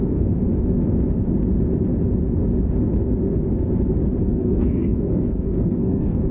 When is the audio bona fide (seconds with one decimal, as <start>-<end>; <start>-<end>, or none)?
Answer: 0.4-4.2